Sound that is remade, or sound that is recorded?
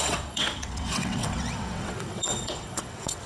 remade